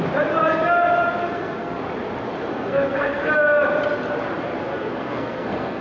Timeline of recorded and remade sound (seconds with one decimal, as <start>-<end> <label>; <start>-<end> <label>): 0.0-1.2 recorded; 1.2-1.8 remade; 1.8-2.5 recorded; 2.5-3.3 remade; 3.3-4.7 recorded; 4.7-5.8 remade